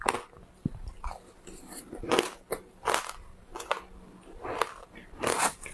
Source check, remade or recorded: recorded